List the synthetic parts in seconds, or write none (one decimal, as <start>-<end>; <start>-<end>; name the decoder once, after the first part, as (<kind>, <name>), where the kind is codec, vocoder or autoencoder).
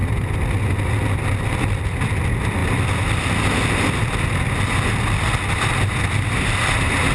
none